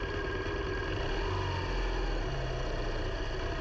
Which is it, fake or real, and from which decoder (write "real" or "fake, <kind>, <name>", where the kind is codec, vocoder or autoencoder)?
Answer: real